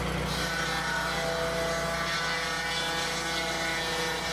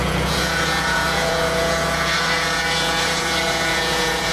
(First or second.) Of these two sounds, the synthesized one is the second